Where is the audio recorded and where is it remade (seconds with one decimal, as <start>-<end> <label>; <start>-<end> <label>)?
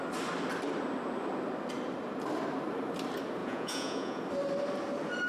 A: 0.0-3.4 recorded; 3.4-4.2 remade; 4.2-5.3 recorded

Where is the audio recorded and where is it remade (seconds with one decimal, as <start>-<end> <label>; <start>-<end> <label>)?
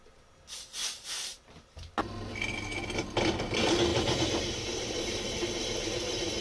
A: 0.0-0.8 recorded; 0.8-1.5 remade; 1.5-3.9 recorded; 3.9-5.4 remade; 5.4-6.4 recorded